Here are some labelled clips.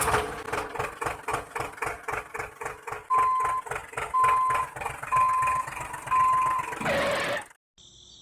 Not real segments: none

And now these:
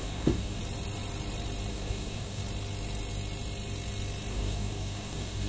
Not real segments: 0.0-0.6; 1.7-2.4; 4.3-5.5

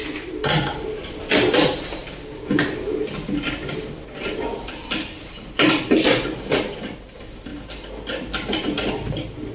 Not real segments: none

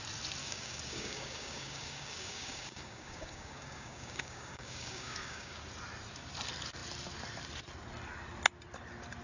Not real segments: 0.4-5.6